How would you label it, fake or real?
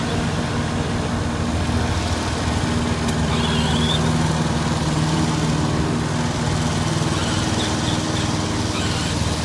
real